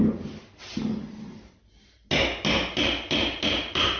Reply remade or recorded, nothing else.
recorded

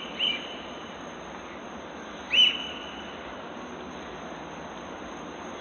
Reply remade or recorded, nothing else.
recorded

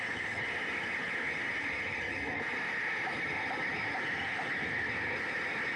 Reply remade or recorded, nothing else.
recorded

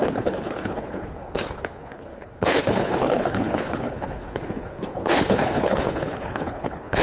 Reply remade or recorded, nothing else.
remade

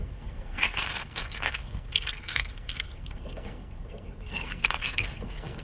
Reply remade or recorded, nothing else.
remade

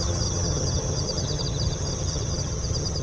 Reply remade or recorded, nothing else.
remade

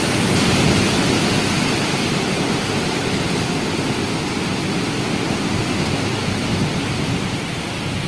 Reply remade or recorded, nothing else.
recorded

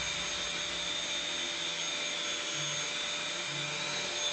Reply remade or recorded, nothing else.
recorded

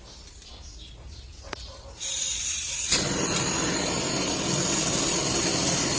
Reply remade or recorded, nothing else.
recorded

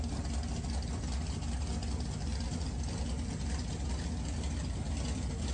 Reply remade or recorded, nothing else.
recorded